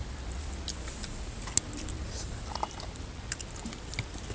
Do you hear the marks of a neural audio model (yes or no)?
no